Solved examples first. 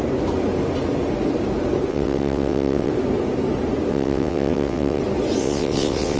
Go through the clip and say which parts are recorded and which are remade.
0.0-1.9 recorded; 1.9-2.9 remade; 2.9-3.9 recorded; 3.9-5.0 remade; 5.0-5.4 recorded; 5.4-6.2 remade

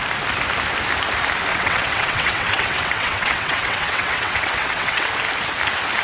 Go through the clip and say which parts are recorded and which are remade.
0.0-1.5 recorded; 1.5-5.1 remade; 5.1-6.0 recorded